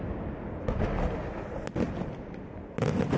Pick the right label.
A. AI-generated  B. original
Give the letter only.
B